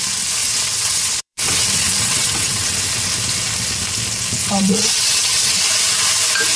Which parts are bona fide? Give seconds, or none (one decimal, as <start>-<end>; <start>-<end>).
0.0-0.4; 2.9-4.4; 5.6-6.6